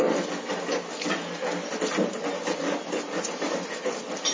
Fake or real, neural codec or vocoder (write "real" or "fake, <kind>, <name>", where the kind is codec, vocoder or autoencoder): real